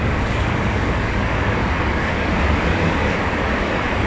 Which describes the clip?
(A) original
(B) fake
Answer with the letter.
B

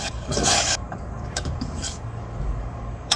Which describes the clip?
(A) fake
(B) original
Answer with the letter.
A